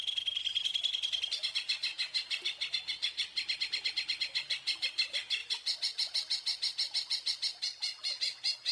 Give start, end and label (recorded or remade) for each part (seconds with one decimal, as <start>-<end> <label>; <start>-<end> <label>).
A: 0.0-8.7 recorded